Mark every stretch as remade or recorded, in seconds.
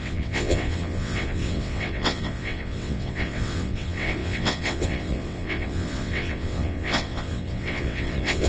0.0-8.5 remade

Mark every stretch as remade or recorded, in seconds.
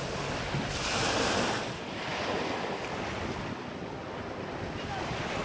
0.0-5.4 recorded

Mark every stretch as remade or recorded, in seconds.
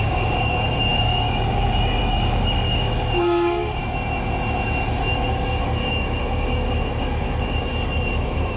0.0-3.8 remade; 3.8-5.1 recorded; 5.1-8.6 remade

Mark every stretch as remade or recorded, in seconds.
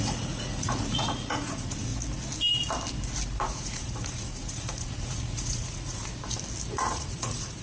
0.0-1.9 remade; 1.9-3.4 recorded; 3.4-6.0 remade; 6.0-6.7 recorded; 6.7-7.6 remade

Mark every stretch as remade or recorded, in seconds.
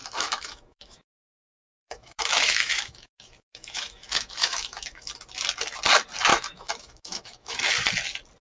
0.0-5.1 remade; 5.1-6.3 recorded; 6.3-7.7 remade; 7.7-8.5 recorded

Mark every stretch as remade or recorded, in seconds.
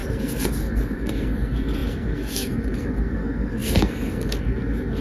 0.0-5.0 remade